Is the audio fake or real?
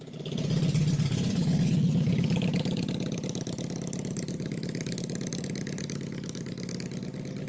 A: real